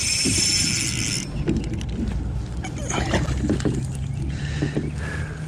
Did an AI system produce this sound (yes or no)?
no